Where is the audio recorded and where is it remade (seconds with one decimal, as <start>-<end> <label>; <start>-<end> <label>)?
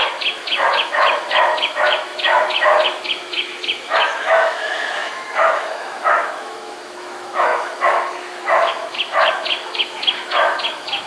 0.0-11.1 remade